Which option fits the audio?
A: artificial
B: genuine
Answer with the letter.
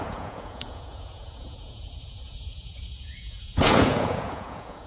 A